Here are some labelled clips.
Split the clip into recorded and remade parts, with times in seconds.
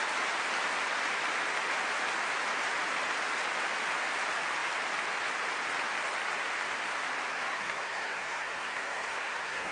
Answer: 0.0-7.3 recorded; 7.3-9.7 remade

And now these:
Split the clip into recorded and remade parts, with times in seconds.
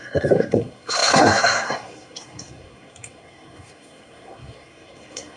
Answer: 0.0-5.4 remade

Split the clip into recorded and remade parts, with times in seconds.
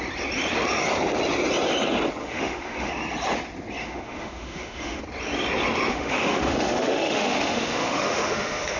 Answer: 0.0-2.2 recorded; 2.2-2.9 remade; 2.9-3.8 recorded; 3.8-5.0 remade; 5.0-5.9 recorded; 5.9-8.8 remade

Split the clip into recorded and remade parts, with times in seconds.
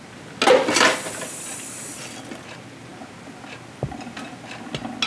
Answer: 0.0-5.1 recorded